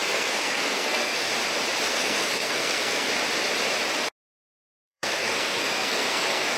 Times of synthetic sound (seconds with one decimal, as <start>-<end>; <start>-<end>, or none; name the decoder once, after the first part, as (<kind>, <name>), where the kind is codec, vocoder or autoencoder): 0.0-1.3 (codec, SNAC); 1.9-3.1; 4.6-6.6